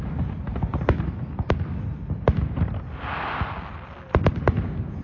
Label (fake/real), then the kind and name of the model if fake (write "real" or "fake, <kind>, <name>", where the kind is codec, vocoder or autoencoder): real